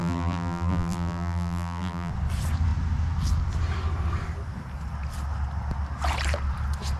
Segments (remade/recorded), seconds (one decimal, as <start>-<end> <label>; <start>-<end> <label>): 0.0-2.1 remade; 2.1-7.0 recorded